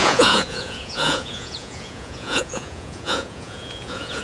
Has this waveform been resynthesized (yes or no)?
yes